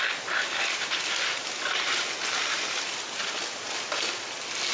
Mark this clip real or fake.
real